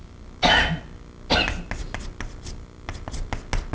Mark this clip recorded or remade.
recorded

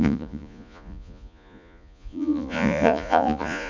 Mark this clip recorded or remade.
remade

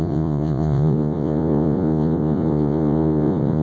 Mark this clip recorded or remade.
remade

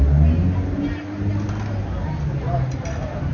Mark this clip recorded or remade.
recorded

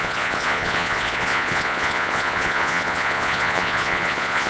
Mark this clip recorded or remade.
remade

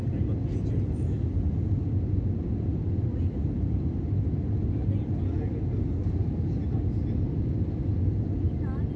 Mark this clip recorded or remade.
recorded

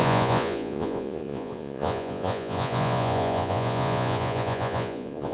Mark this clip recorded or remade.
remade